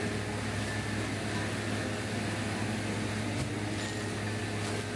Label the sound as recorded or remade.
recorded